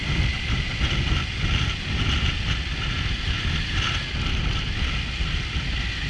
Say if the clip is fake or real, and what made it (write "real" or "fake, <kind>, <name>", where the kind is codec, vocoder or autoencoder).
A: real